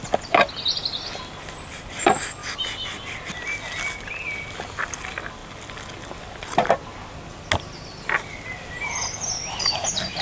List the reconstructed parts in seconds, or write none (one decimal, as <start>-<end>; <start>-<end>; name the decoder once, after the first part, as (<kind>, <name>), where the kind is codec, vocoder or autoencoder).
none